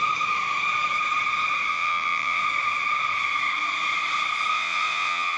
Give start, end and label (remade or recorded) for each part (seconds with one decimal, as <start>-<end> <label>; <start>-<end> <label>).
0.0-1.7 recorded; 1.7-2.4 remade; 2.4-4.5 recorded; 4.5-5.4 remade

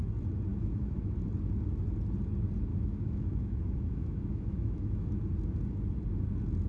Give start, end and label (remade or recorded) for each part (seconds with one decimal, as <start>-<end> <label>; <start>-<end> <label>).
0.0-0.5 recorded; 0.5-1.1 remade; 1.1-2.7 recorded; 2.7-5.3 remade; 5.3-6.7 recorded